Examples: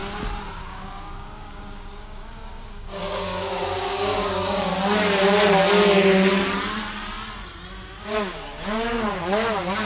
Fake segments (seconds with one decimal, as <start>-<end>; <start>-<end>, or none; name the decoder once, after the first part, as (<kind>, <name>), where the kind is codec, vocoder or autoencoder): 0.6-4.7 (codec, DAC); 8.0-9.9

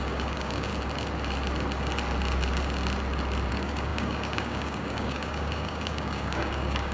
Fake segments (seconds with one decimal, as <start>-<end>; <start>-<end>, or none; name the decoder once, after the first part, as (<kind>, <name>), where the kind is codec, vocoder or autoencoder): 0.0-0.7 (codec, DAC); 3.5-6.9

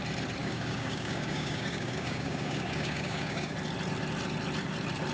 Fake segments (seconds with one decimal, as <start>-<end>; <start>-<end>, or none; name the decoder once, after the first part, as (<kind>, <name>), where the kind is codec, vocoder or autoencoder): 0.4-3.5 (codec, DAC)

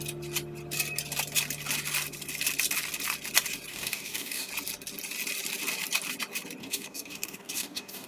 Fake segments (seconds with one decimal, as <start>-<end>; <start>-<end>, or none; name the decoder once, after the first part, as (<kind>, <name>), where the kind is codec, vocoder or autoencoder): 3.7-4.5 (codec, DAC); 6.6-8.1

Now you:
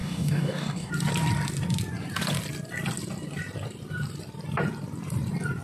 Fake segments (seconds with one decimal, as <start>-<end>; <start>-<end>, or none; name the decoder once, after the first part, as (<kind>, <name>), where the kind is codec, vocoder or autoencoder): 0.0-0.9 (codec, DAC)

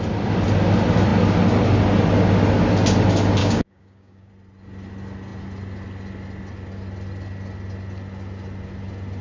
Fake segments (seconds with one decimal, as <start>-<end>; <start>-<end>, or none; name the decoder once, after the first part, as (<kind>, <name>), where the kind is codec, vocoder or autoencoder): 3.4-4.3 (codec, DAC)

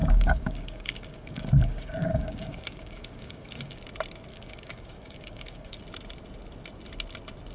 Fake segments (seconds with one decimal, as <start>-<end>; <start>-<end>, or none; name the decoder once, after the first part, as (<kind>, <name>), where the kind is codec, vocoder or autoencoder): 0.0-3.8 (codec, DAC); 4.3-5.8

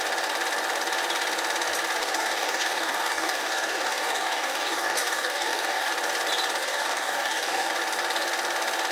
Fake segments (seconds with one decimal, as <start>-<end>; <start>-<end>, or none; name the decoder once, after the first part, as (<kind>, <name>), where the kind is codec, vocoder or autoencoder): 2.0-5.9 (codec, DAC); 6.6-7.7